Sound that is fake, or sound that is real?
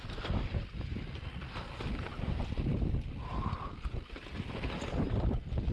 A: fake